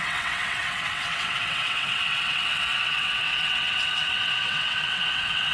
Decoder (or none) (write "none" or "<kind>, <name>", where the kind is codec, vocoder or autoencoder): vocoder, WaveNeXt